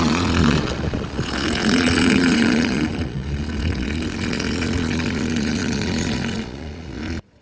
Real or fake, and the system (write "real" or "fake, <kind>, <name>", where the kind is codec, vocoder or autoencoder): fake, vocoder, Vocos